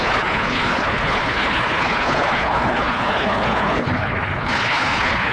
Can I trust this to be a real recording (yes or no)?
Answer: no